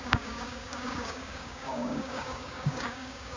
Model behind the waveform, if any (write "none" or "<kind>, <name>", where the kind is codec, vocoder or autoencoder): codec, DAC